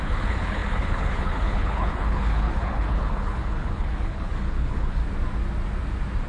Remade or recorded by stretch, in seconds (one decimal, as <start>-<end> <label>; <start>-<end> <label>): 0.0-5.0 remade; 5.0-6.3 recorded